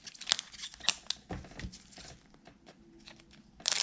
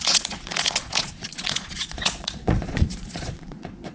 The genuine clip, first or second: first